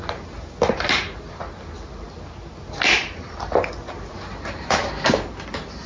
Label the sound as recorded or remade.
recorded